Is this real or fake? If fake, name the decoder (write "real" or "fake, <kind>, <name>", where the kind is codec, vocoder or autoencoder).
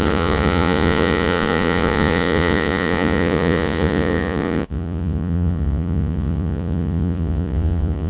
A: fake, vocoder, Vocos